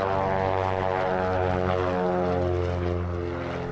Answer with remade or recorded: recorded